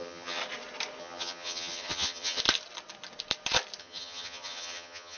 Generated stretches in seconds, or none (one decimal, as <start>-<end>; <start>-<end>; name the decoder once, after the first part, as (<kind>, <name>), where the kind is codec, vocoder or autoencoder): 0.0-0.4 (vocoder, HiFi-GAN); 1.0-2.4; 3.8-5.2